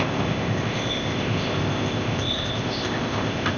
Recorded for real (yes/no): no